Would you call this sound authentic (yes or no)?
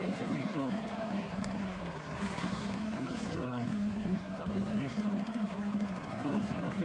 no